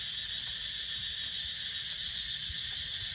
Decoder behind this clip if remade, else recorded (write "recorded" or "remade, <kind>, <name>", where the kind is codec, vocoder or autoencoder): recorded